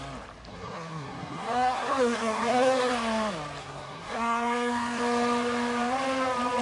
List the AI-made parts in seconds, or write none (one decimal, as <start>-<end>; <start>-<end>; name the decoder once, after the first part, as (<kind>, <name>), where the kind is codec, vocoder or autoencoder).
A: 0.5-2.9 (codec, SNAC); 3.6-5.0